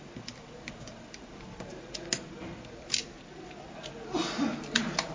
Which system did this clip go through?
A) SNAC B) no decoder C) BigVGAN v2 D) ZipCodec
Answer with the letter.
B